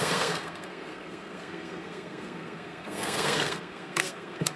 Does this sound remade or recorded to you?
remade